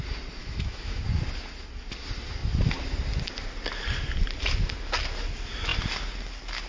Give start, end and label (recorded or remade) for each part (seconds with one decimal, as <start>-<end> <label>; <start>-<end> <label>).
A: 0.0-0.4 recorded; 0.4-1.0 remade; 1.0-6.7 recorded